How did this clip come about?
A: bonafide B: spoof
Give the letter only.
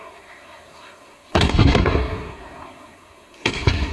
B